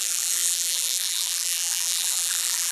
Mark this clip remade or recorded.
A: remade